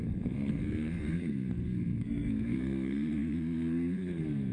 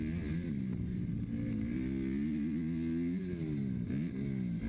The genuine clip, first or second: second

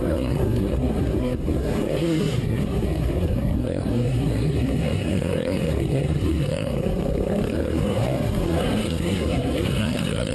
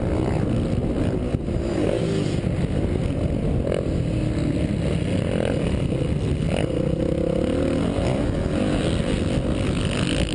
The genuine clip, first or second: second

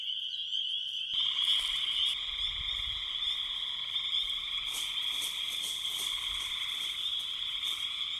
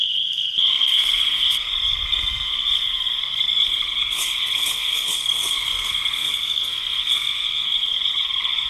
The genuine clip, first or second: first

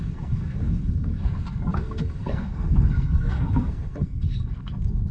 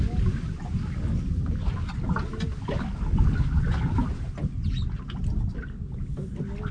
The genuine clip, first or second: second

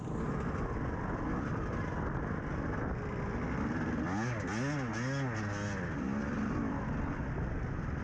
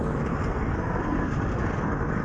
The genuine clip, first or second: first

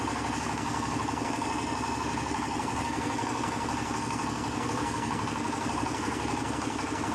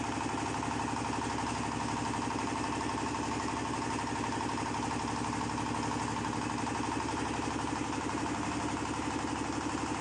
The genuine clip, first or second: second